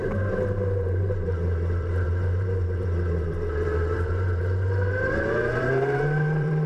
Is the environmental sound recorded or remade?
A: remade